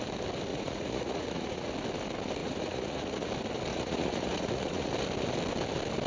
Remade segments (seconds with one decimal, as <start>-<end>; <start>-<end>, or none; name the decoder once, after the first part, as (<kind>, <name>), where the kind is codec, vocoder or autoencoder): 0.5-1.7 (vocoder, Vocos); 2.4-3.3; 3.7-4.9